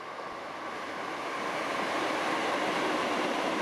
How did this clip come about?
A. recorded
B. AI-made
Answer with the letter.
A